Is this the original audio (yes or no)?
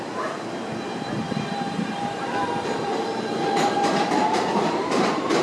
no